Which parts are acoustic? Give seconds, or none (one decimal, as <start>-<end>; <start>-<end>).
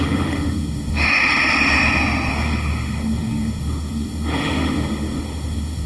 1.3-2.3